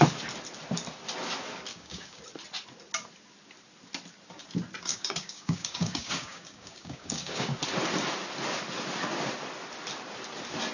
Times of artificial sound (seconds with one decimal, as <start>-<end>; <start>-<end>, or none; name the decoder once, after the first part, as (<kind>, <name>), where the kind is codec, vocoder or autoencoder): 1.7-2.2 (codec, DAC); 4.9-7.6